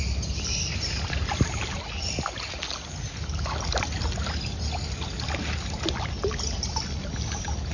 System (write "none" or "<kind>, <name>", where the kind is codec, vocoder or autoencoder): none